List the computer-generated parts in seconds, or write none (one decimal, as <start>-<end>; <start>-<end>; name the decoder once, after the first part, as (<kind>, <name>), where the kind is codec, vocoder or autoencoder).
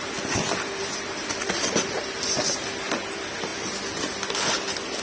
none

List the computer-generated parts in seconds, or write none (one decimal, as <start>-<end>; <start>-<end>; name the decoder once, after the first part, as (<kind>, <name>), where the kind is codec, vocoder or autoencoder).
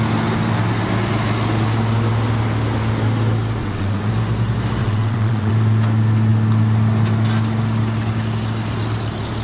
3.6-4.1 (vocoder, WaveNeXt); 4.8-5.5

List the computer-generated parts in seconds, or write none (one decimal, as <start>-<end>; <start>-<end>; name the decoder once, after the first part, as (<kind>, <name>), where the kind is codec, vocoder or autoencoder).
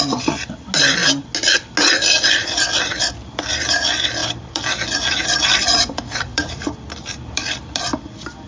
4.2-7.8 (vocoder, BigVGAN v2)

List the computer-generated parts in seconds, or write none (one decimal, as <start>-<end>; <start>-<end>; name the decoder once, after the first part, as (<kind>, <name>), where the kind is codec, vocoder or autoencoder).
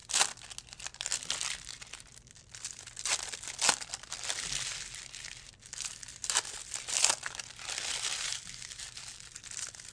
none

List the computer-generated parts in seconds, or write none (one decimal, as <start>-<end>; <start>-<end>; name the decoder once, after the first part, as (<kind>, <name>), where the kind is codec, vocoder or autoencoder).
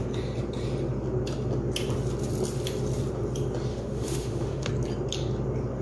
3.7-4.7 (autoencoder, DAC-VAE)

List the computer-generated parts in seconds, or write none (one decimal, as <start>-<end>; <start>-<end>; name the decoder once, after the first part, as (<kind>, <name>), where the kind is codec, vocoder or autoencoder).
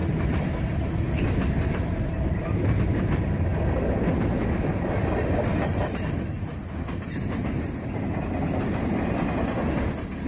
0.0-2.8 (vocoder, BigVGAN v2); 5.5-6.6